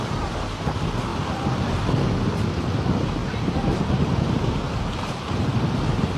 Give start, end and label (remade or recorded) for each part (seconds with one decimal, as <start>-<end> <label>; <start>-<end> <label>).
0.0-6.2 recorded